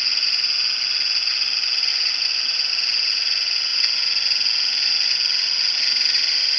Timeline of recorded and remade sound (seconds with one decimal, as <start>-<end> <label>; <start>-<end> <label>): 0.0-6.6 recorded